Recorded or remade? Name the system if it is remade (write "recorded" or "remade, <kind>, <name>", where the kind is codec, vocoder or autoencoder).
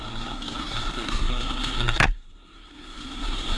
remade, codec, SNAC